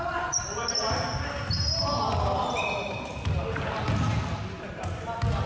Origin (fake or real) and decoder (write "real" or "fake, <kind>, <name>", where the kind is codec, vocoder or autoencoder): real